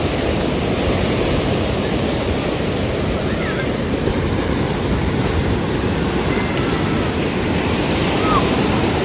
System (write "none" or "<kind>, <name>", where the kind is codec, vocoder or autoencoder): none